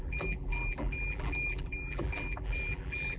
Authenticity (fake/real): fake